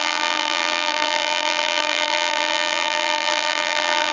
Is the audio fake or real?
fake